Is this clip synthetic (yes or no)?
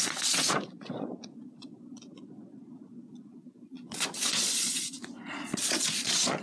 yes